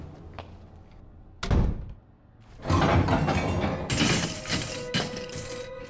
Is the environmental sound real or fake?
real